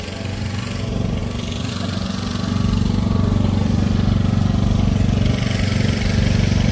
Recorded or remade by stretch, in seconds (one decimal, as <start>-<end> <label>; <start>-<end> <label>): 0.0-6.7 recorded